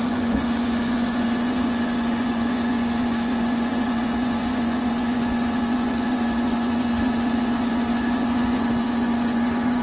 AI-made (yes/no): yes